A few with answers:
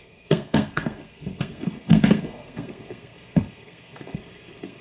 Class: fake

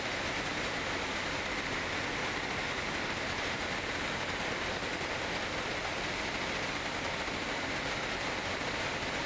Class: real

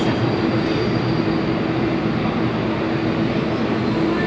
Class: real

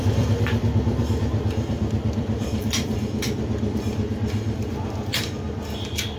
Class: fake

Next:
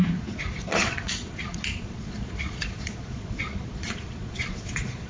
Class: fake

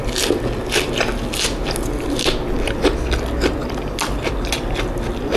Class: real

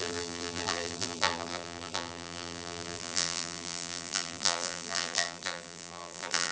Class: fake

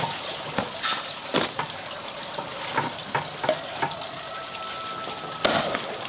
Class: real